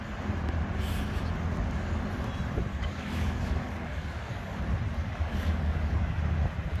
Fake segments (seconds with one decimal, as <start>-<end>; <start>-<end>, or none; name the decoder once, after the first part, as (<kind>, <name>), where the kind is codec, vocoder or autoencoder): 2.7-4.6 (codec, DAC); 5.0-6.2